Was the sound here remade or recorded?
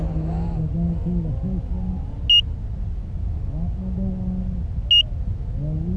recorded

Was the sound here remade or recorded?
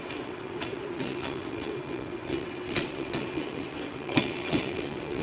remade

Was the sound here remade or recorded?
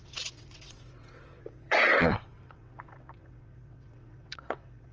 remade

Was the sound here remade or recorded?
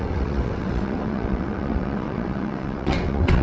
remade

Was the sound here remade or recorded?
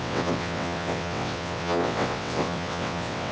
remade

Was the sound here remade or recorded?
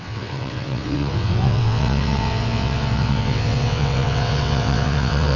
remade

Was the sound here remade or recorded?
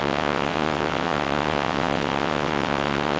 remade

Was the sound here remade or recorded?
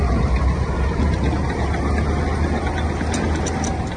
recorded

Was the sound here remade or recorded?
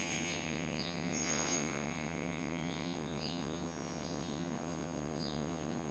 remade